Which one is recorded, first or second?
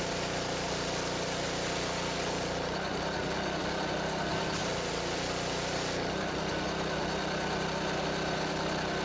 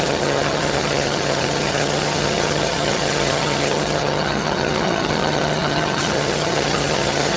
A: first